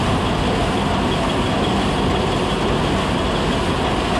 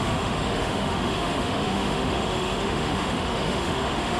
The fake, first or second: second